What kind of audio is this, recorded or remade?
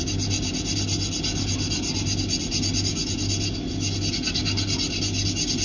recorded